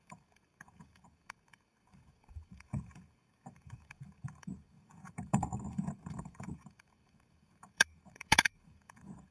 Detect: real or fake fake